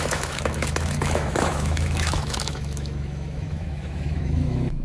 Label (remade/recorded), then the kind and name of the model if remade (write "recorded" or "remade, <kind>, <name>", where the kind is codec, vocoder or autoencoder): remade, autoencoder, DAC-VAE